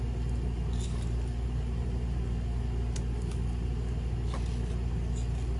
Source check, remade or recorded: recorded